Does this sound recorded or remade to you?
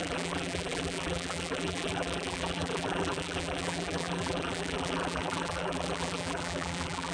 remade